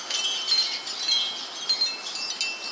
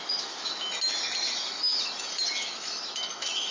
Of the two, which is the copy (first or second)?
second